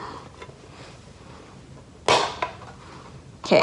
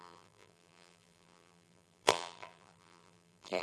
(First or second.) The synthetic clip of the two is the second